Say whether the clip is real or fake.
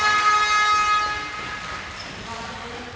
real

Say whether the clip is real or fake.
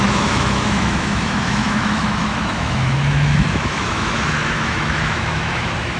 fake